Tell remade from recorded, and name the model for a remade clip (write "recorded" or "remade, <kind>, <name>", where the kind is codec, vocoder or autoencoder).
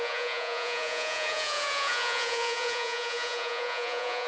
remade, vocoder, Vocos